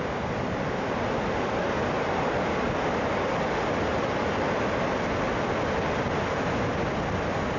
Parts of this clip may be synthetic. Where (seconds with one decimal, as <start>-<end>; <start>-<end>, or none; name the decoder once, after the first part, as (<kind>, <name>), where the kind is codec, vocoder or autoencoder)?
none